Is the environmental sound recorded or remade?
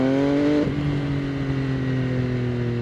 recorded